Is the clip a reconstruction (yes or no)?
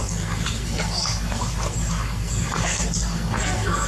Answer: yes